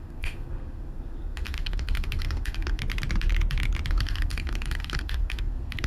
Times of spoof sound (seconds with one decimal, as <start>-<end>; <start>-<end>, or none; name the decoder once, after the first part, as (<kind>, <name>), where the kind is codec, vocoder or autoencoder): 0.0-2.8 (codec, SNAC); 3.9-5.9